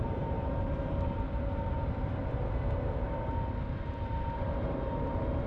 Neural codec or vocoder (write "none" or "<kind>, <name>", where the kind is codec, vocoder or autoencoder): none